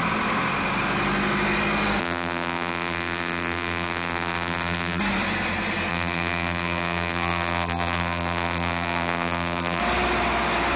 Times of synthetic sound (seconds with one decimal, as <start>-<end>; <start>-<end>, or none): 2.0-5.0; 5.9-9.8